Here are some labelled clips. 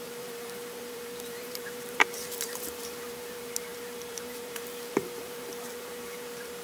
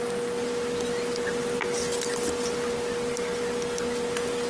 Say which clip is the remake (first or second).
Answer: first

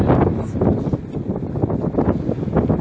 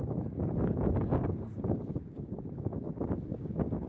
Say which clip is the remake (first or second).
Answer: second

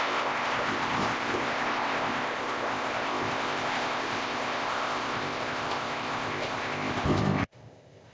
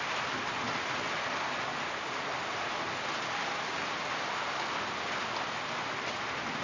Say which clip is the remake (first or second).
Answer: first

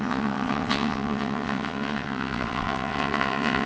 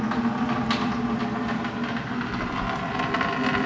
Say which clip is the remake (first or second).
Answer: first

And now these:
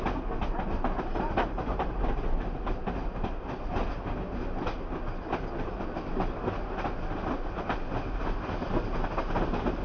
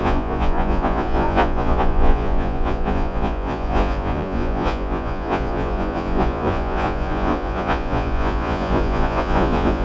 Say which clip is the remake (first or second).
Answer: second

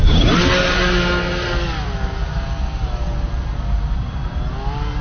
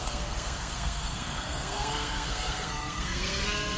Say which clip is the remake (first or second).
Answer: second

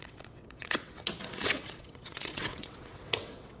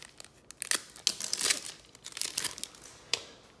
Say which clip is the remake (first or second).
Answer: first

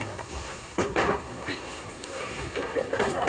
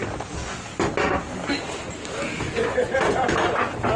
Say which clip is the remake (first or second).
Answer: first